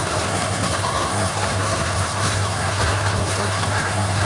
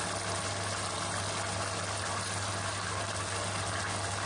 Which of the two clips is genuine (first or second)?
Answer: second